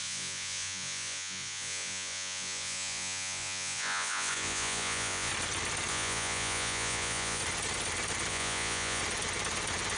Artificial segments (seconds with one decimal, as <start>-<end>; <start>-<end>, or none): 0.0-5.3; 5.9-7.4; 8.3-9.0